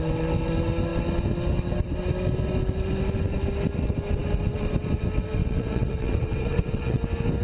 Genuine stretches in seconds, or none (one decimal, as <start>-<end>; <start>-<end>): 0.0-5.4; 7.0-7.4